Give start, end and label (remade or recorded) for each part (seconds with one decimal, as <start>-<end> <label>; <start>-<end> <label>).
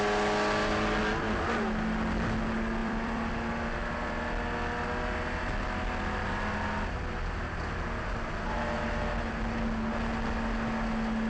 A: 0.0-2.8 recorded; 2.8-3.3 remade; 3.3-11.3 recorded